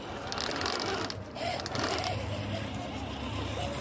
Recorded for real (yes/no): yes